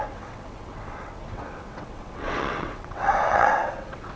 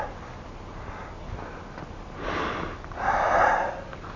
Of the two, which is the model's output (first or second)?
first